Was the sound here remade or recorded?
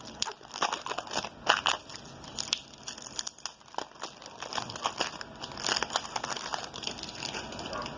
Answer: recorded